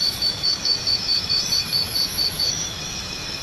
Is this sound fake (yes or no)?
yes